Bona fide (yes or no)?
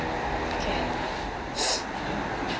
yes